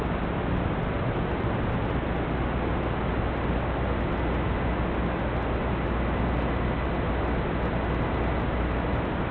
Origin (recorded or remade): recorded